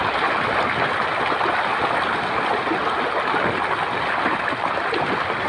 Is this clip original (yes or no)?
yes